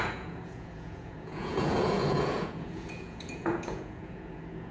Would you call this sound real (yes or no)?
no